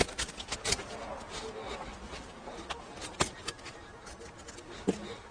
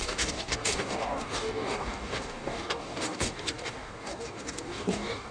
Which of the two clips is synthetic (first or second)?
second